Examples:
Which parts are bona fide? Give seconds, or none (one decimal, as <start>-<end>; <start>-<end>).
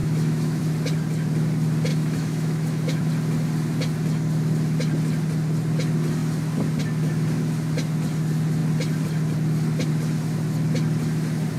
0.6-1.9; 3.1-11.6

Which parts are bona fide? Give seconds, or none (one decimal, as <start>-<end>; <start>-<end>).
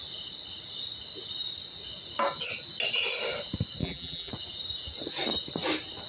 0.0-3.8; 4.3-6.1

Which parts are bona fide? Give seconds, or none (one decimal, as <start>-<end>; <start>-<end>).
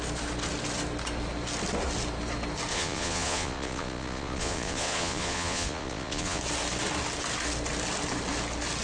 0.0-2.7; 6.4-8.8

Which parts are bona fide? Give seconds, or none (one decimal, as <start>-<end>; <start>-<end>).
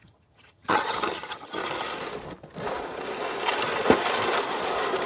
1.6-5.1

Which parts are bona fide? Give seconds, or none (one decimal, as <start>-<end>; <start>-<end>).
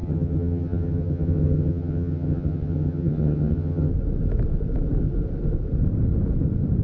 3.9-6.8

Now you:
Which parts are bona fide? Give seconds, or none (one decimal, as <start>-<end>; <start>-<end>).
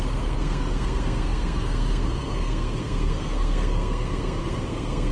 none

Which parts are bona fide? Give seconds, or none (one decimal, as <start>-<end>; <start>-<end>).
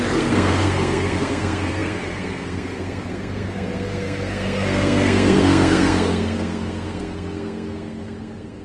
none